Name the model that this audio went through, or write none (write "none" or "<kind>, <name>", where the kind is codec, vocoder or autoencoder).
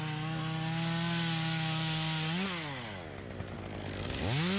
none